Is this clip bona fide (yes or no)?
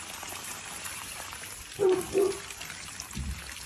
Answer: yes